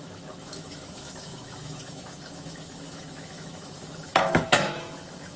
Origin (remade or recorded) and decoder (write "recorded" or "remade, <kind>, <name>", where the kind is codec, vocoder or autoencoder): remade, autoencoder, DAC-VAE